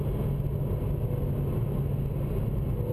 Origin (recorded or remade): recorded